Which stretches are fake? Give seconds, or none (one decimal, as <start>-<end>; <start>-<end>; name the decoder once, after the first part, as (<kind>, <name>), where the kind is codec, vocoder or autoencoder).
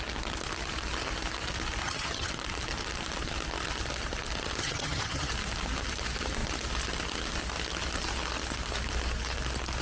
1.8-2.3 (vocoder, HiFi-GAN); 4.6-5.3